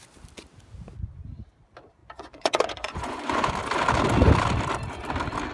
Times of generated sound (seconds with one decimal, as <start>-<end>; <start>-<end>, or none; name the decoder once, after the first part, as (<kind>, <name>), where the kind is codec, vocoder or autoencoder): 2.0-3.5 (vocoder, Vocos)